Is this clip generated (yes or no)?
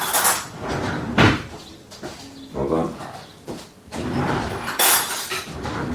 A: no